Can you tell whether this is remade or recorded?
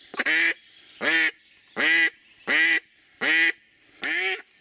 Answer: recorded